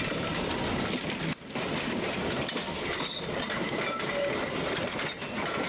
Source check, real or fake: real